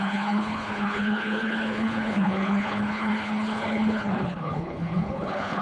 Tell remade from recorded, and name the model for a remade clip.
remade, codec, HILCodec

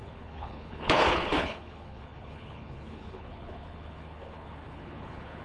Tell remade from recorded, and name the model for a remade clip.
remade, codec, HILCodec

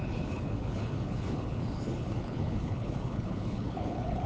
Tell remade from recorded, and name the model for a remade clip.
remade, codec, HILCodec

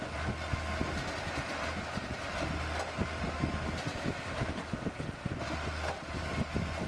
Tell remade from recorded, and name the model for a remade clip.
recorded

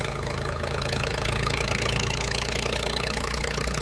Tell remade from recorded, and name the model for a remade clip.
remade, codec, HILCodec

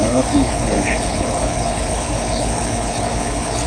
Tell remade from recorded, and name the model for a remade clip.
remade, codec, HILCodec